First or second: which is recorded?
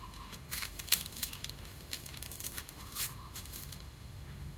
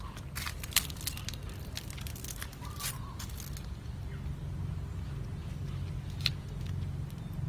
second